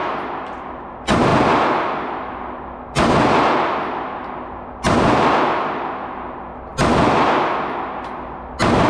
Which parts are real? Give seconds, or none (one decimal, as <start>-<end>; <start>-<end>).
0.0-8.9